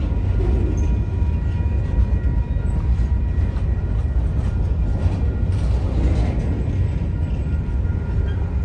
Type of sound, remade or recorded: recorded